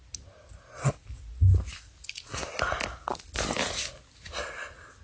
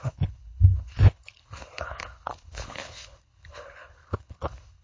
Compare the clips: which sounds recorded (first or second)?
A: first